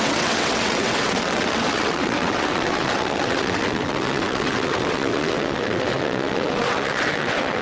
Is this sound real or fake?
fake